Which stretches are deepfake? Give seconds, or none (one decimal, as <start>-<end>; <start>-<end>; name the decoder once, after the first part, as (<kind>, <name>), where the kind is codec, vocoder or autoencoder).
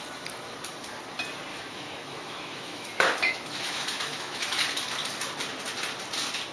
1.5-4.6 (autoencoder, DAC-VAE)